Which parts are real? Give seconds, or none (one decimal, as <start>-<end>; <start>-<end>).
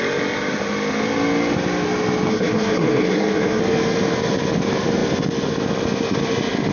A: 0.0-2.3; 3.6-6.7